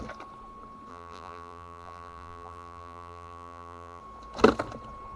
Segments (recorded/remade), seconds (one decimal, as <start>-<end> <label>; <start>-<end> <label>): 0.0-0.9 recorded; 0.9-4.0 remade; 4.0-5.2 recorded